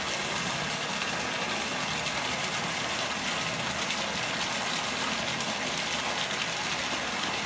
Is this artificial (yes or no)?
no